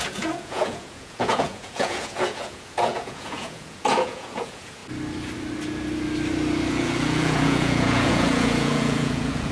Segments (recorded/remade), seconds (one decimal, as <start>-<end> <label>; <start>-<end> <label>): 0.0-4.8 remade; 4.8-6.7 recorded; 6.7-9.5 remade